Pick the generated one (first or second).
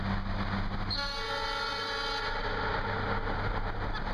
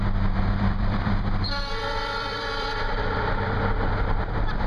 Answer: second